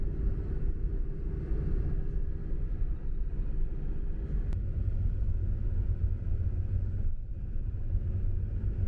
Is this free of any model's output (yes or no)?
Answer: no